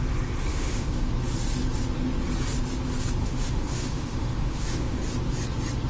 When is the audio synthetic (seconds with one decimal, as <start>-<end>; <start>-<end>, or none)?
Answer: 0.5-1.1; 3.2-5.0